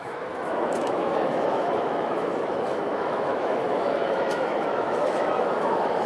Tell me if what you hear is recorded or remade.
remade